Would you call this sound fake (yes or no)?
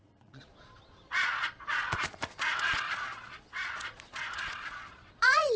yes